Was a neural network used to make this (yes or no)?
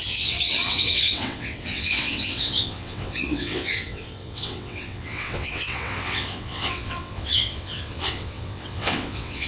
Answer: yes